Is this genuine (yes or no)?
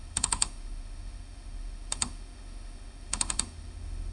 no